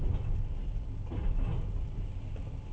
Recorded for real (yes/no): yes